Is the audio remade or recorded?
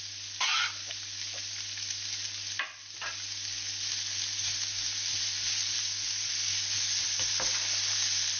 recorded